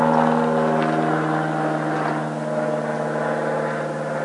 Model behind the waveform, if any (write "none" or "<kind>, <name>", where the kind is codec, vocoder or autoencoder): none